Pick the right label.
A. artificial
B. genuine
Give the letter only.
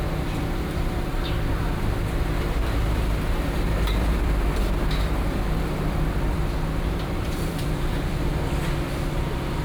A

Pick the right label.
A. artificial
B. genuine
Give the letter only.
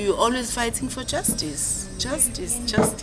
B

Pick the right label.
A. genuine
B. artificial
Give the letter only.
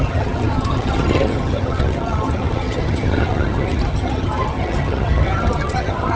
B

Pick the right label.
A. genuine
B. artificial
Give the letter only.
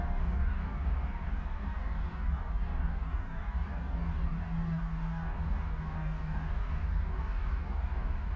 B